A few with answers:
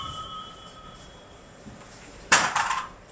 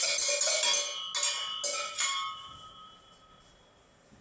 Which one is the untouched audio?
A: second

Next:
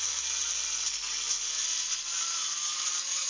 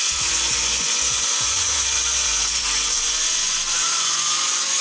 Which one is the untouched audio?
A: first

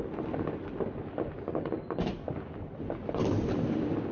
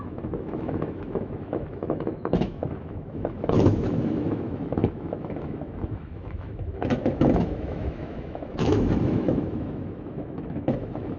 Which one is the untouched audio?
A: first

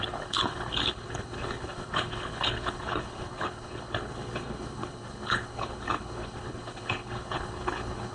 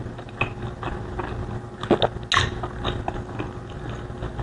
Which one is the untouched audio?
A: second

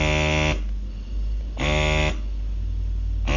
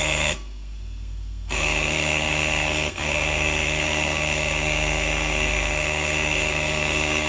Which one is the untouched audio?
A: first